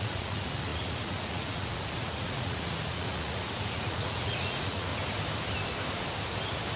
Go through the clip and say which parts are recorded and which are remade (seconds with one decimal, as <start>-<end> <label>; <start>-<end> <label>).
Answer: 0.0-4.9 remade; 4.9-6.8 recorded